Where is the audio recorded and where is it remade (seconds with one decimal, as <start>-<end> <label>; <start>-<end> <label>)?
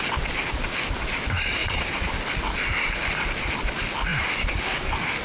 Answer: 0.0-1.6 recorded; 1.6-2.1 remade; 2.1-5.2 recorded